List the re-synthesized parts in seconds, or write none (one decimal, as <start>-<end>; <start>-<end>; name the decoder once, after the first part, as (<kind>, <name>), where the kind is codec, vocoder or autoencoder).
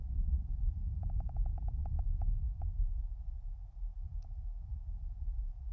0.0-4.1 (vocoder, BigVGAN v2)